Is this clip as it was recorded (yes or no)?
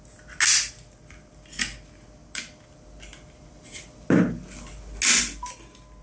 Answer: yes